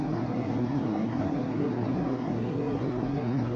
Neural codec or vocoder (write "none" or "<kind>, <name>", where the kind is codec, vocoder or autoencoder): codec, SNAC